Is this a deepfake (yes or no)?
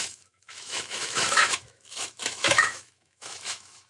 yes